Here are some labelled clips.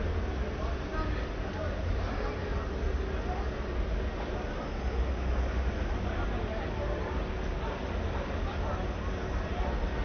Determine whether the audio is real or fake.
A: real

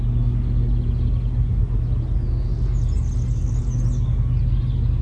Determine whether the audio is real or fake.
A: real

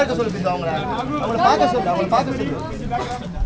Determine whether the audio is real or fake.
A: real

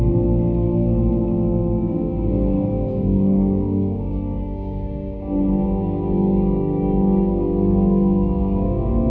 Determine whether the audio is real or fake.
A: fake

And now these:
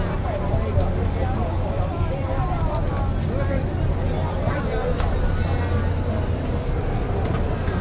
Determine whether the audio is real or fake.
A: real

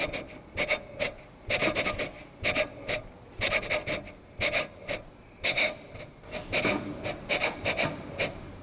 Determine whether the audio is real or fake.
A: real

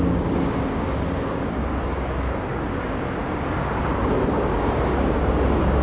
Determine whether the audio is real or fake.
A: fake